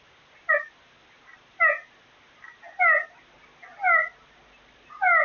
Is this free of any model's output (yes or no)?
yes